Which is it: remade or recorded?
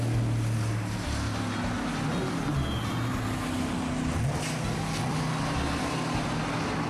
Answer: recorded